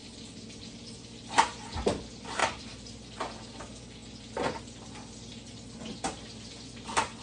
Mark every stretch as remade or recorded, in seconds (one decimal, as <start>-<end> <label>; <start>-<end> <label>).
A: 0.0-7.2 recorded